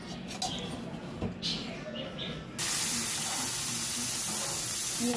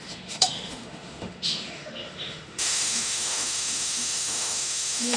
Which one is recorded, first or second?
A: first